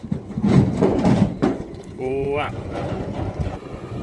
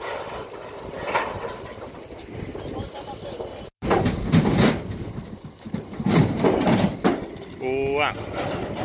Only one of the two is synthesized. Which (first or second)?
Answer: first